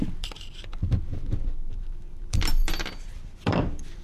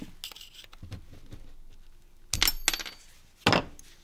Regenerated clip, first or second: first